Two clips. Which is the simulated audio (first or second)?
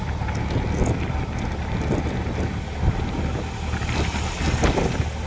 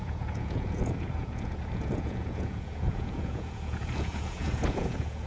second